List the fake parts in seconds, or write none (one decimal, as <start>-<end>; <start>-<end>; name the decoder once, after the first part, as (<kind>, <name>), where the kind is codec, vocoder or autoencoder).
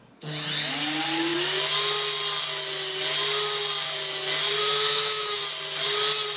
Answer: 4.6-5.4 (autoencoder, DAC-VAE)